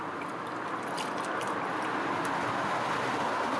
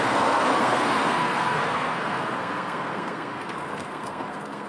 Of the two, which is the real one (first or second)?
first